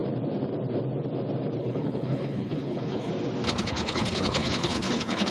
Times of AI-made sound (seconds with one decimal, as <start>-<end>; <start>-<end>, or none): 1.6-3.1; 3.6-5.3